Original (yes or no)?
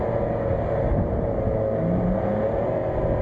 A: yes